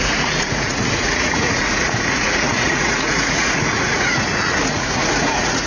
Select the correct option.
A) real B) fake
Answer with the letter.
B